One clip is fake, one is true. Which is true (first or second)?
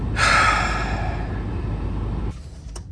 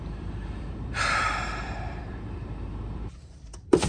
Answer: first